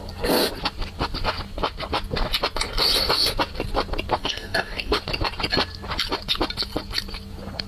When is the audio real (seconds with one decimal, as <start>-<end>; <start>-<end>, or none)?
0.0-4.2; 5.0-7.7